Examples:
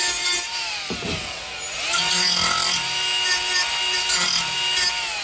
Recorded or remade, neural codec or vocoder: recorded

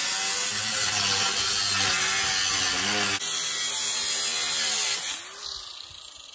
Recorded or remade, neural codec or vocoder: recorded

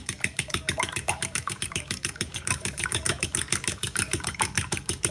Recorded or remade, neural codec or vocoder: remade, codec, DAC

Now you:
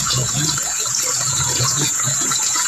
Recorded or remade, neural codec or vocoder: remade, vocoder, Vocos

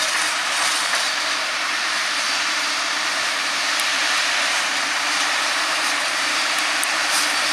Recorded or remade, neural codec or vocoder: remade, vocoder, BigVGAN v2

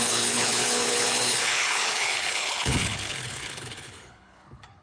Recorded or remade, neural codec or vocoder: remade, codec, HILCodec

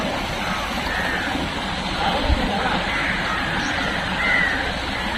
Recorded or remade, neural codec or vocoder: recorded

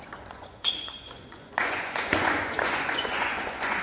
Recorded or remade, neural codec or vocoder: remade, vocoder, Vocos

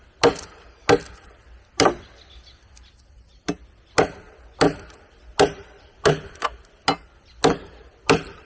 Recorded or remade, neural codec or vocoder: recorded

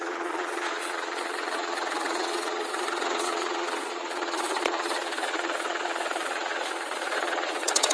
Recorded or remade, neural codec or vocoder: remade, vocoder, Vocos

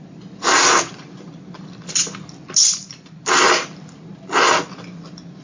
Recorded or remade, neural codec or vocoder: recorded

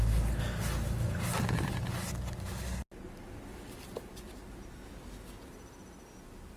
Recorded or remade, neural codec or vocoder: recorded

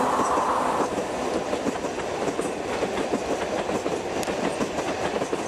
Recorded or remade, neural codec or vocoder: recorded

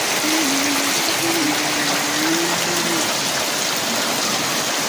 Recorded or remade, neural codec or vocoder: recorded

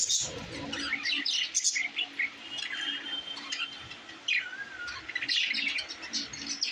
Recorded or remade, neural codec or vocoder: recorded